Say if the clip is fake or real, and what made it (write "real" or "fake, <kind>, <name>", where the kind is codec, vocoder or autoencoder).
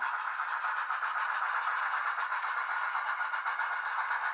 real